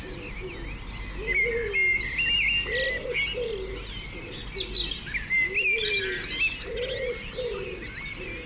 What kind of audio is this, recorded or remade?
recorded